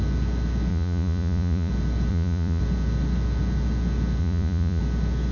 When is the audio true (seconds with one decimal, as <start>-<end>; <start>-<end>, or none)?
0.0-0.7; 1.7-2.1; 2.6-4.2; 4.8-5.3